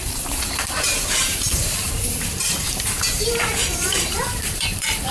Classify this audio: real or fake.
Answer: fake